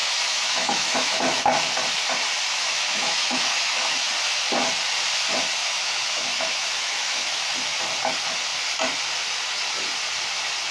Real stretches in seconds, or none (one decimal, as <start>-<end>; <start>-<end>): 1.4-2.5; 4.1-5.6; 7.5-10.7